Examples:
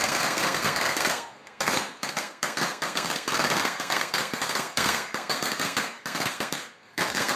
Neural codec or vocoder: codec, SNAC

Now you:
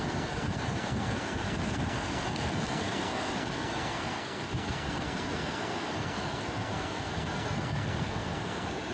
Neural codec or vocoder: codec, SNAC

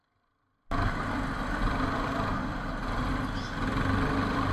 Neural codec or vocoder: none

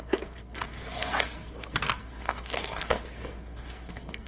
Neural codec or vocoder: codec, SNAC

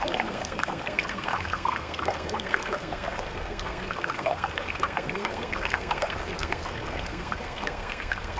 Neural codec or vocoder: codec, SNAC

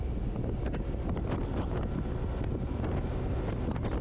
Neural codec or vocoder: none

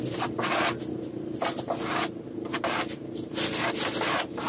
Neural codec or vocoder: none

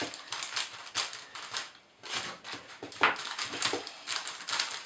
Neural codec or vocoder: none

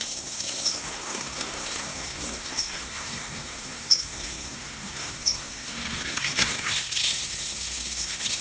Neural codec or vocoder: codec, SNAC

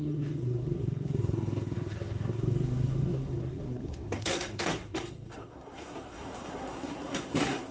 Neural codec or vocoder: codec, SNAC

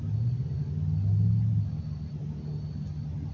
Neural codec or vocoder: none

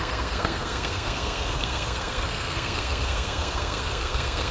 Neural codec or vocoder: codec, SNAC